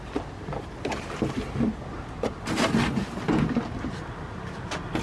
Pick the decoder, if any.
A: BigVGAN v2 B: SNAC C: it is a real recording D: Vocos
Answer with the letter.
C